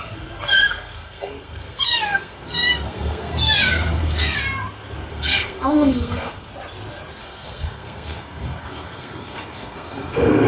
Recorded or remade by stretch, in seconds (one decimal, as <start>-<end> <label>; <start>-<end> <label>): 0.0-4.4 remade; 4.4-5.1 recorded; 5.1-6.5 remade; 6.5-7.2 recorded; 7.2-10.5 remade